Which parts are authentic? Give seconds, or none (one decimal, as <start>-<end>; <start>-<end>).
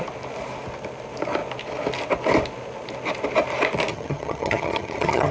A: 0.0-3.9